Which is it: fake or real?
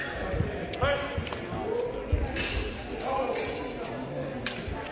real